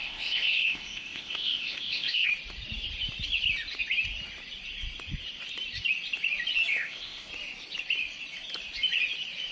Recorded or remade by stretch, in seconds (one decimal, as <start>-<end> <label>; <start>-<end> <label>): 0.0-2.3 remade; 2.3-6.7 recorded; 6.7-7.3 remade; 7.3-9.5 recorded